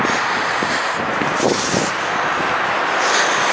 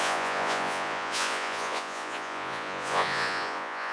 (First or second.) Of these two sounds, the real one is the first